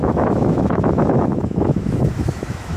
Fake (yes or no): yes